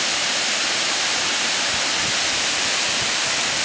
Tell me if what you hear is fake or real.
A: real